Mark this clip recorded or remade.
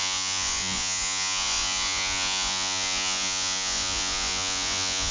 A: remade